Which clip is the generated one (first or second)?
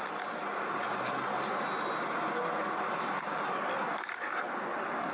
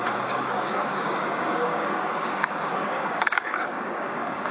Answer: second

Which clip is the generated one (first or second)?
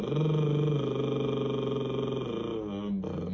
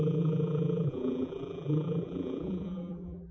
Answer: second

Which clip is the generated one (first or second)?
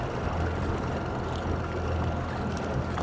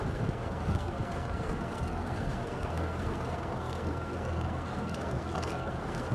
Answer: second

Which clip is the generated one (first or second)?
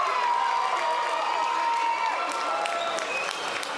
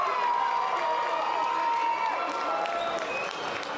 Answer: first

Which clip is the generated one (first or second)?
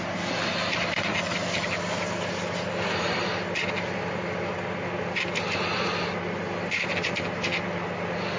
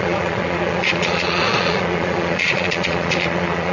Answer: second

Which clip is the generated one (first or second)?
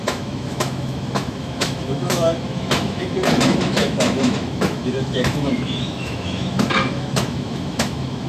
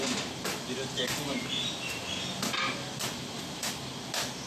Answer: first